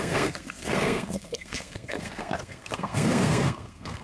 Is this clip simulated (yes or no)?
yes